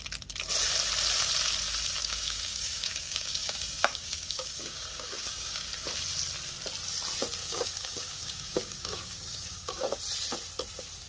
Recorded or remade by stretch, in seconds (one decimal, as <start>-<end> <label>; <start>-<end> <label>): 0.0-2.0 recorded; 2.0-5.7 remade; 5.7-7.4 recorded; 7.4-10.0 remade; 10.0-11.1 recorded